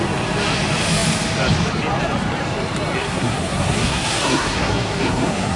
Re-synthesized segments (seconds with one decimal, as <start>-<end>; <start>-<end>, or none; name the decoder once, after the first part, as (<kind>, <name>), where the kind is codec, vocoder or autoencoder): 3.0-5.6 (codec, SNAC)